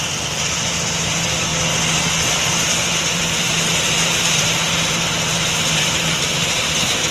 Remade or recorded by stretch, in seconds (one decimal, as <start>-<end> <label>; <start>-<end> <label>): 0.0-1.5 remade; 1.5-2.1 recorded; 2.1-7.1 remade